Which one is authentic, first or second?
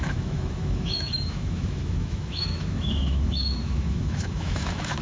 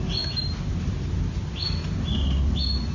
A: second